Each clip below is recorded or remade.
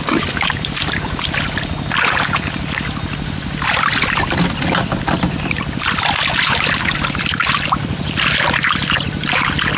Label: recorded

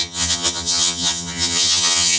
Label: remade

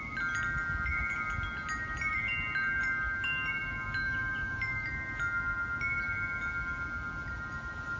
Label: recorded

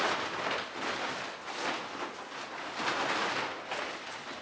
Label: recorded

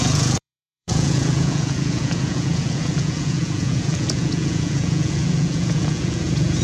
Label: remade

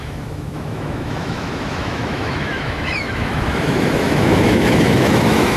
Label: remade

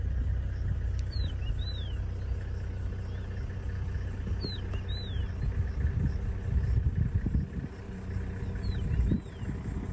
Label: recorded